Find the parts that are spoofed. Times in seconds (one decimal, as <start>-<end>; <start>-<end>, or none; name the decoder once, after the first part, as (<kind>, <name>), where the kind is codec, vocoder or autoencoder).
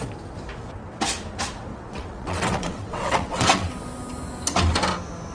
1.7-3.7 (vocoder, WaveNeXt)